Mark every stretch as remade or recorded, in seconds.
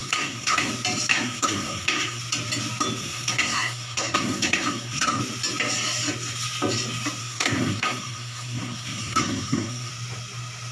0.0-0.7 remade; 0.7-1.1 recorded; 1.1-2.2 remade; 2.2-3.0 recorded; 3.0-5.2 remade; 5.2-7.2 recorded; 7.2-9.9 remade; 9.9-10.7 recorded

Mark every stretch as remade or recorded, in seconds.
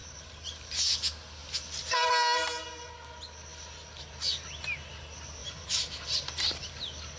0.0-0.7 remade; 0.7-5.4 recorded; 5.4-6.7 remade; 6.7-7.2 recorded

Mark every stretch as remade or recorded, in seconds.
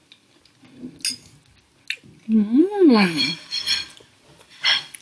0.0-2.6 recorded; 2.6-3.2 remade; 3.2-5.0 recorded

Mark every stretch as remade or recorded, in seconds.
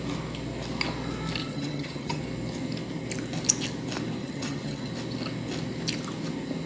0.0-1.4 recorded; 1.4-2.2 remade; 2.2-4.2 recorded; 4.2-4.9 remade; 4.9-6.7 recorded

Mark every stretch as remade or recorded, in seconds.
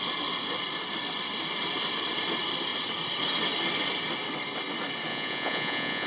0.0-5.1 recorded; 5.1-6.1 remade